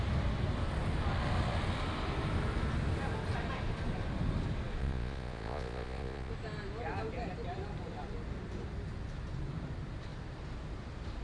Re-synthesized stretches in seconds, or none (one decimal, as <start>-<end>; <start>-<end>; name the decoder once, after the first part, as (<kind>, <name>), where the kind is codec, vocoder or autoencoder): 4.8-6.3 (vocoder, Vocos)